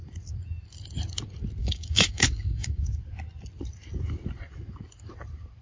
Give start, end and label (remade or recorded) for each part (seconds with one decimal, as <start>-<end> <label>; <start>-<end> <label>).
0.0-1.6 recorded; 1.6-3.0 remade; 3.0-5.6 recorded